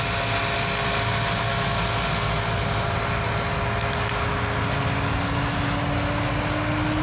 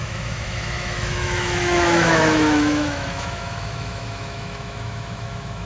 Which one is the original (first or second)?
first